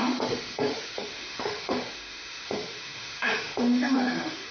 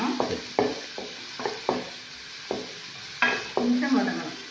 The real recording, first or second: second